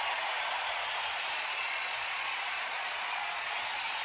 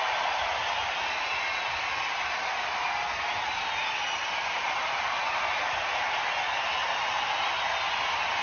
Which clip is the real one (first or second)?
second